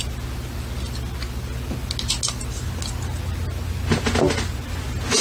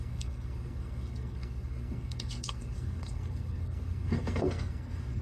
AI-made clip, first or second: second